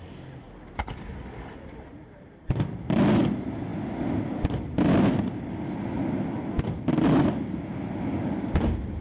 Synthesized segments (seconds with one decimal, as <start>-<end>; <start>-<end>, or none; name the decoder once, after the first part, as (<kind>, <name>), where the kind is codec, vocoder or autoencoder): none